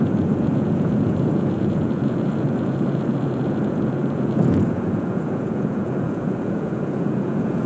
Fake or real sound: fake